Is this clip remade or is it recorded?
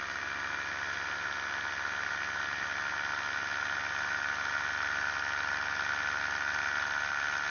recorded